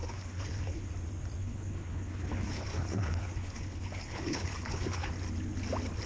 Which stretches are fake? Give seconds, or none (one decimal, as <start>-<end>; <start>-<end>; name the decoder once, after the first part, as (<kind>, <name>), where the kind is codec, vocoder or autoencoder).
0.0-0.9 (codec, HILCodec); 1.4-5.1